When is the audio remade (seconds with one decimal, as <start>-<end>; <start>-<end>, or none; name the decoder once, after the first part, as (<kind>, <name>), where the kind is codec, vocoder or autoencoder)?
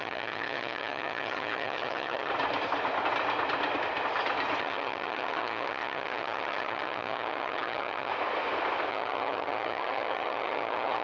0.0-2.3 (vocoder, HiFi-GAN); 4.6-8.1; 8.9-11.0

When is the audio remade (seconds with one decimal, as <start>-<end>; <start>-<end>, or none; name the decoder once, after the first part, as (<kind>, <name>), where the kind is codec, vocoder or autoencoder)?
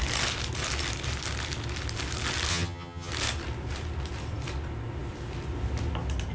2.5-3.1 (vocoder, HiFi-GAN)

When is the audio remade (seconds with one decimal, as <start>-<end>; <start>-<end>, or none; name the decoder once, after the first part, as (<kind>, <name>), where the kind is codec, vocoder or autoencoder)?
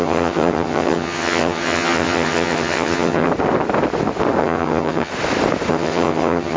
0.0-3.3 (vocoder, HiFi-GAN); 4.4-5.1; 5.7-6.6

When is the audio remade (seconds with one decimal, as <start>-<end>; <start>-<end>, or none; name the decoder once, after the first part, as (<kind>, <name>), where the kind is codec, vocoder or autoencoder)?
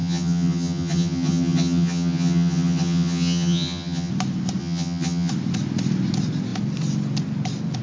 0.0-4.1 (vocoder, HiFi-GAN); 4.6-5.3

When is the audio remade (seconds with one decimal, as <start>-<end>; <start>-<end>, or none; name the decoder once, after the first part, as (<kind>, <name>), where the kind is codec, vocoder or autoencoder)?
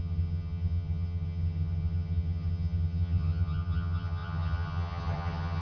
0.0-5.6 (vocoder, HiFi-GAN)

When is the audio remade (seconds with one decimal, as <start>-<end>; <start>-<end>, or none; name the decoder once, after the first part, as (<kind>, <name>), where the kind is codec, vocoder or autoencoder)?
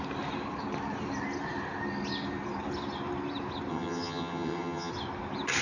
3.7-4.9 (vocoder, HiFi-GAN)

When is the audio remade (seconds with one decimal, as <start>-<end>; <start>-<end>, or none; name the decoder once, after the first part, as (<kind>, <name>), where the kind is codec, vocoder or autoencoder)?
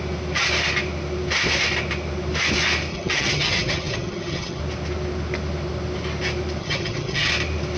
2.9-4.6 (vocoder, HiFi-GAN); 6.6-7.3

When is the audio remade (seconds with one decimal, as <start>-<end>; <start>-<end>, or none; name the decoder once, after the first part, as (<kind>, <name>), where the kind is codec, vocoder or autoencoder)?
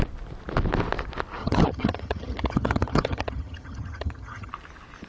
1.4-4.5 (vocoder, HiFi-GAN)